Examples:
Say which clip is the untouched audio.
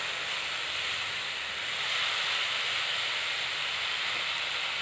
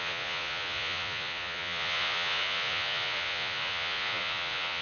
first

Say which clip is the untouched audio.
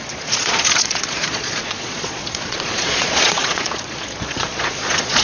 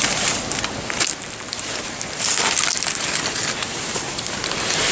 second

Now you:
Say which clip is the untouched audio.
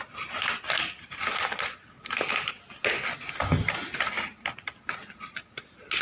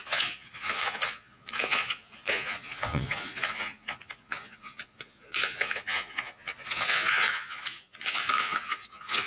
first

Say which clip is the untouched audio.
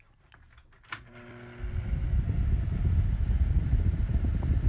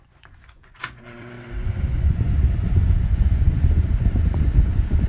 first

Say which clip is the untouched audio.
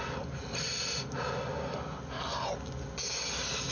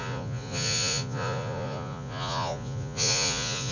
first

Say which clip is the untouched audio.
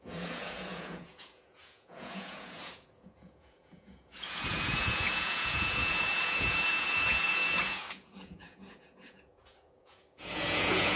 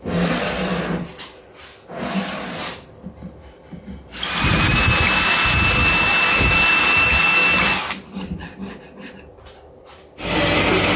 second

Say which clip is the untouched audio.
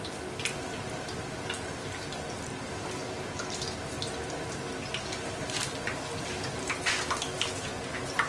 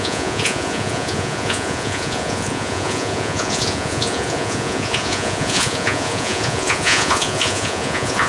first